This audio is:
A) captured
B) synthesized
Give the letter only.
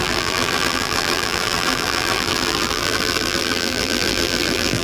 B